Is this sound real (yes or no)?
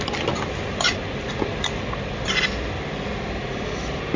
yes